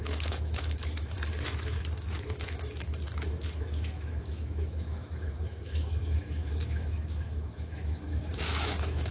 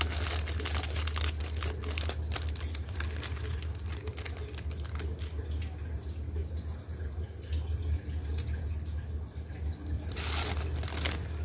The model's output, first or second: first